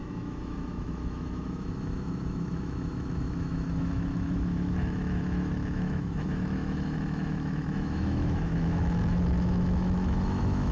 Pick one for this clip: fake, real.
fake